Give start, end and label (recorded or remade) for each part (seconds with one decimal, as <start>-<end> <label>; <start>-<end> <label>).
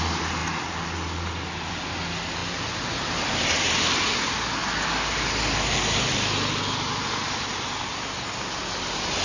0.0-9.2 recorded